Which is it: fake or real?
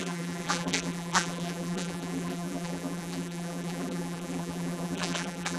fake